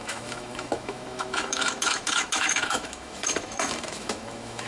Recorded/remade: remade